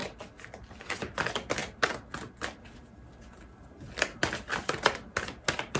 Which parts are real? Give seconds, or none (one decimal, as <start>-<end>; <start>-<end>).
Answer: 0.0-5.8